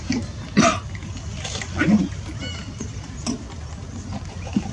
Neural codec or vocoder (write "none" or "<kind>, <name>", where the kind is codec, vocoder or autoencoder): none